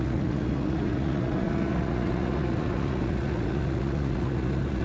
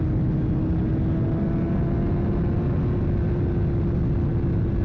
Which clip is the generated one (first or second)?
first